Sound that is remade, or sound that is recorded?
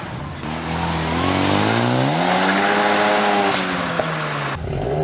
recorded